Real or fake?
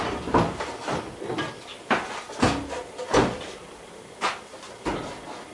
real